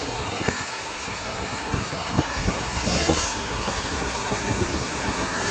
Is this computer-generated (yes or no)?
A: yes